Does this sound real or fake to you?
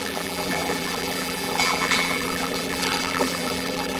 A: fake